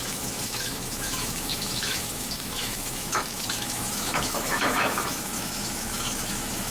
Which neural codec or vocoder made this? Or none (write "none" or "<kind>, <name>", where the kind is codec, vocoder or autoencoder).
autoencoder, DAC-VAE